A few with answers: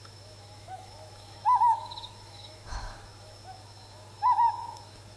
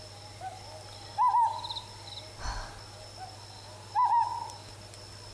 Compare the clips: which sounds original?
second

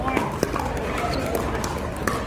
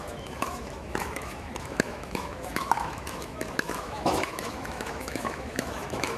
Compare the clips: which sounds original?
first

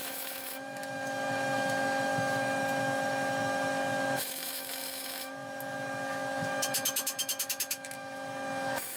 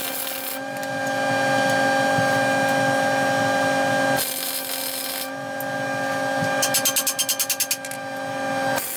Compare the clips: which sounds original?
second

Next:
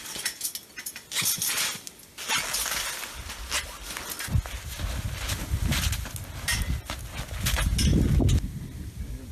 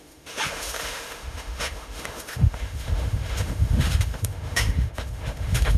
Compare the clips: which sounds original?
first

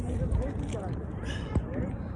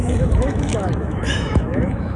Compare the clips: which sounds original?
first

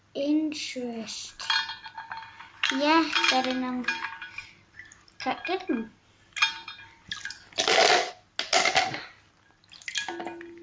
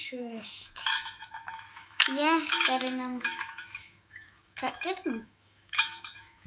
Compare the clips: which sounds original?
first